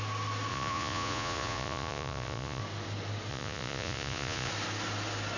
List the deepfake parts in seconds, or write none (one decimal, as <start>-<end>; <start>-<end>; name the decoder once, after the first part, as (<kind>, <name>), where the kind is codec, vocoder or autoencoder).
0.5-2.6 (vocoder, Vocos); 3.3-4.5